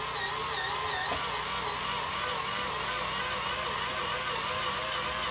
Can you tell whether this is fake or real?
real